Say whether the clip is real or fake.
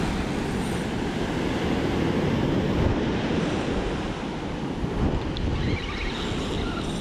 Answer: real